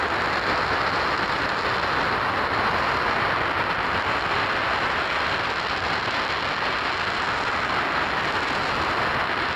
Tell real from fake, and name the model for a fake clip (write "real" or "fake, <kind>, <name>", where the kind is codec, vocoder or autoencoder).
real